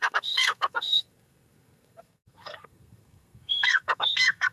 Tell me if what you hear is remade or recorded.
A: remade